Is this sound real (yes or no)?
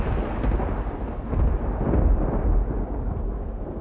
yes